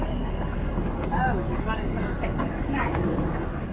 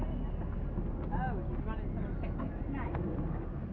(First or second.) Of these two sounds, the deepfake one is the first